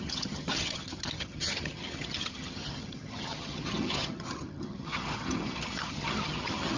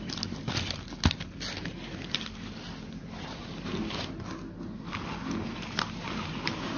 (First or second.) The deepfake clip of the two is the first